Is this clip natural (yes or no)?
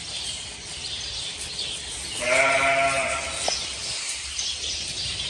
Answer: yes